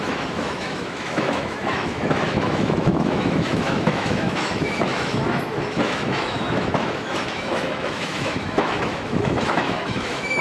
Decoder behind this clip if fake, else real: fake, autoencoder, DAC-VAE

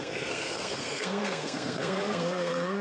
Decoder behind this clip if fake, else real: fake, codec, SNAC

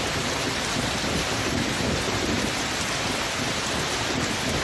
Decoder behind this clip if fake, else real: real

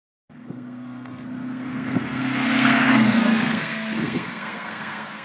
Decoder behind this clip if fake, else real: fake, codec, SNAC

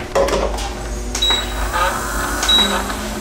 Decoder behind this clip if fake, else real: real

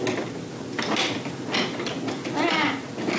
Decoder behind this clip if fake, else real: real